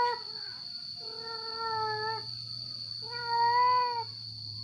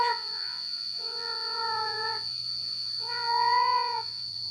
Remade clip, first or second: second